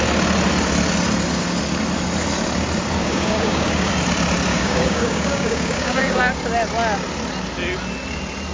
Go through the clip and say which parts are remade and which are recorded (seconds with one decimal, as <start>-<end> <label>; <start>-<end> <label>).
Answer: 0.0-3.0 recorded; 3.0-3.9 remade; 3.9-4.5 recorded; 4.5-6.2 remade; 6.2-8.5 recorded